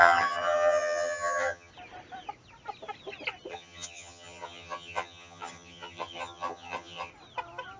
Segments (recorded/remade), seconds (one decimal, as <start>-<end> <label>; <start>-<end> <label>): 0.0-1.7 remade; 1.7-3.5 recorded; 3.5-7.1 remade; 7.1-7.8 recorded